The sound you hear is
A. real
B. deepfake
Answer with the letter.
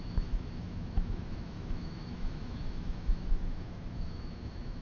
B